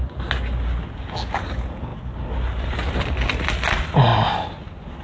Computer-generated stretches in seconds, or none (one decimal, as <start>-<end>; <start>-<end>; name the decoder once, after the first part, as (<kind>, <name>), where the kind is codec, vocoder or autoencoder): none